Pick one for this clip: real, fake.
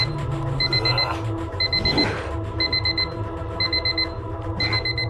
real